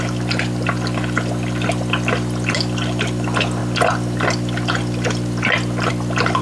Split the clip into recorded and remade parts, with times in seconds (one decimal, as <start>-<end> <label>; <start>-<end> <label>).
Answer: 0.0-6.4 recorded